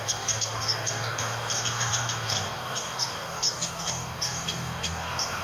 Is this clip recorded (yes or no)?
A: no